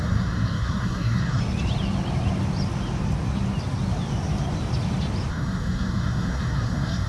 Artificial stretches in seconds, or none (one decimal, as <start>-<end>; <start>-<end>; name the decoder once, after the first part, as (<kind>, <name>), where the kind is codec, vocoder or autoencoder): 0.0-1.4 (codec, SNAC); 5.3-7.1

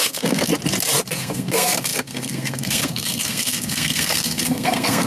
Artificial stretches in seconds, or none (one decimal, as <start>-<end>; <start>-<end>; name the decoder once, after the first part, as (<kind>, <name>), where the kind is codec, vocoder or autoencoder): 0.0-0.5 (codec, SNAC); 1.1-5.1

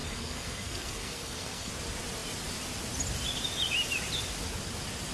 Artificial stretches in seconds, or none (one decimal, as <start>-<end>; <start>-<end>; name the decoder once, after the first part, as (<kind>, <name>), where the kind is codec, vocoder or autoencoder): 0.0-1.7 (codec, SNAC)

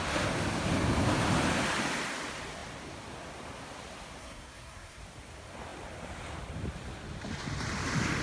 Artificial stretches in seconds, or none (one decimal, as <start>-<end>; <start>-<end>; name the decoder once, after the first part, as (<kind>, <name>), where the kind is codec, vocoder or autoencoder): 4.2-5.0 (codec, SNAC)

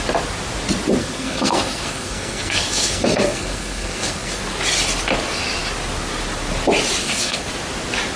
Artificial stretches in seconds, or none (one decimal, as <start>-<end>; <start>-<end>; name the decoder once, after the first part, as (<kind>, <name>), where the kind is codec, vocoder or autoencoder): 1.0-4.4 (codec, SNAC); 7.0-7.5

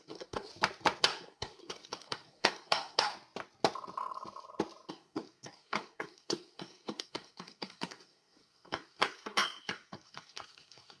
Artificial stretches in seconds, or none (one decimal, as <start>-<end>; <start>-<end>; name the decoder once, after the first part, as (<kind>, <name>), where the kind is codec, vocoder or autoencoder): 0.0-0.5 (codec, SNAC); 1.0-3.1; 4.9-11.0

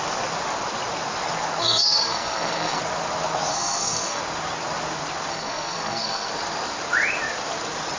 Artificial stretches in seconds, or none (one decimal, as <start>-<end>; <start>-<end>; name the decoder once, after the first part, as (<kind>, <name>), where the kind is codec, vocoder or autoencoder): 1.6-2.8 (codec, SNAC); 3.5-4.2; 5.3-6.3

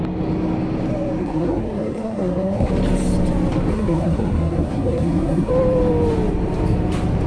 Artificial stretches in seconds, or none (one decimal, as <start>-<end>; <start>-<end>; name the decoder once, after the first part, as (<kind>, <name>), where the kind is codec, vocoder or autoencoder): 1.2-2.7 (codec, SNAC); 3.7-5.5